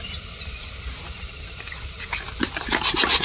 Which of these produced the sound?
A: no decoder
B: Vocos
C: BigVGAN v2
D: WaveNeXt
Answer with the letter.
C